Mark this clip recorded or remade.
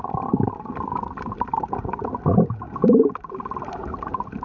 remade